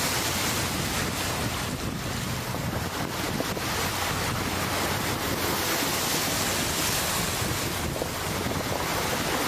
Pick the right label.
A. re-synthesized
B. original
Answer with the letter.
B